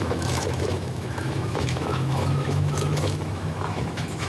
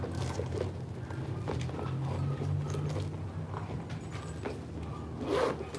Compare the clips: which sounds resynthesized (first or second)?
first